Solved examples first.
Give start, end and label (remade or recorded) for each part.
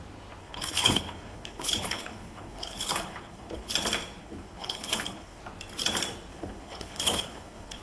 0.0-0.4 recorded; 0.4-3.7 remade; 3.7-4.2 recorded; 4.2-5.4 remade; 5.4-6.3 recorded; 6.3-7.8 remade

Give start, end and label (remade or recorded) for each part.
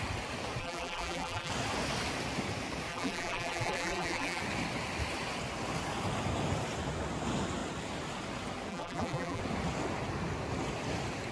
0.0-0.6 recorded; 0.6-1.5 remade; 1.5-2.9 recorded; 2.9-4.4 remade; 4.4-8.7 recorded; 8.7-9.4 remade; 9.4-11.3 recorded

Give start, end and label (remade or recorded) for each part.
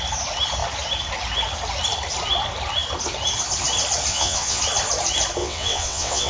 0.0-4.1 recorded; 4.1-4.6 remade; 4.6-5.4 recorded; 5.4-6.3 remade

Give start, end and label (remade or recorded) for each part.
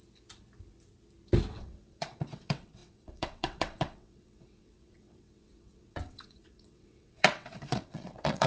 0.0-1.5 recorded; 1.5-8.5 remade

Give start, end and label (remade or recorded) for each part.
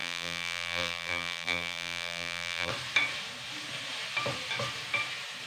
0.0-2.7 remade; 2.7-5.5 recorded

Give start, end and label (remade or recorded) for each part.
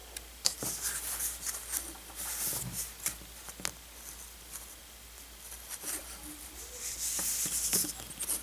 0.0-8.4 recorded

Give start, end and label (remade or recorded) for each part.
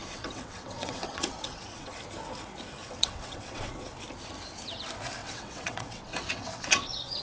0.0-2.0 remade; 2.0-2.8 recorded; 2.8-3.7 remade; 3.7-5.2 recorded; 5.2-7.2 remade